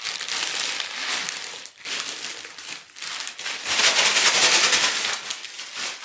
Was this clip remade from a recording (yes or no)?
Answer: no